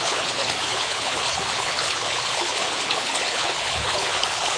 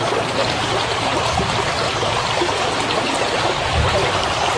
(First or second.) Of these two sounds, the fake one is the first